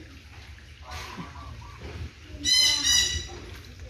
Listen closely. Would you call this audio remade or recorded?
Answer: recorded